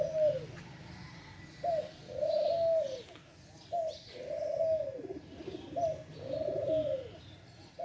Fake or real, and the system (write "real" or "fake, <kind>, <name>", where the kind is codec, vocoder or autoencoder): real